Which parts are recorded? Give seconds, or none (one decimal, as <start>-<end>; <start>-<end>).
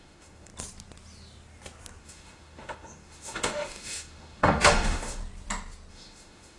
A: 0.5-2.0; 5.2-5.9